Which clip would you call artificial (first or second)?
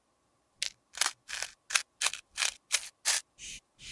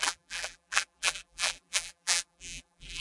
second